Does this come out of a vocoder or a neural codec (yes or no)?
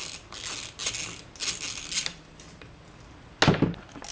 no